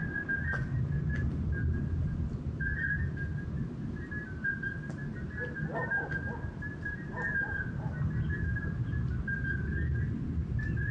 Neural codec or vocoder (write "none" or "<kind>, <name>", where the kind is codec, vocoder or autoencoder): none